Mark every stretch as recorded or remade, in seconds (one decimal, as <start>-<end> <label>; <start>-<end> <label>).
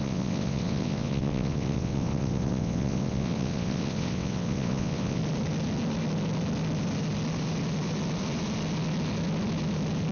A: 0.0-5.2 remade; 5.2-10.1 recorded